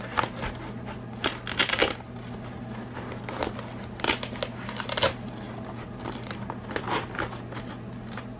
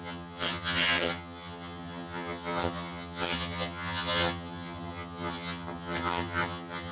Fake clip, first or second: second